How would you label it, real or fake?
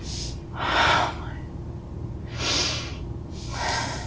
real